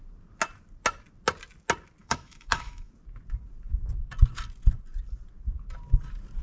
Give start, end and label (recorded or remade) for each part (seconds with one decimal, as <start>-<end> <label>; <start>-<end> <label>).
0.0-2.0 recorded; 2.0-2.9 remade; 2.9-6.4 recorded